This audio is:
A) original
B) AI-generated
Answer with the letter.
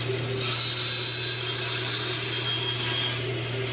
A